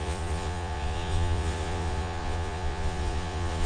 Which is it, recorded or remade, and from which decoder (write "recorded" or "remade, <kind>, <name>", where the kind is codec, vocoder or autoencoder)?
remade, vocoder, Vocos